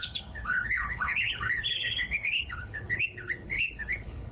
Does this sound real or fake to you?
fake